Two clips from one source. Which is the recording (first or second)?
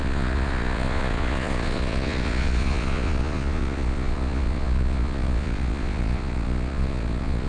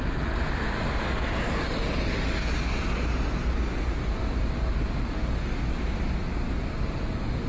second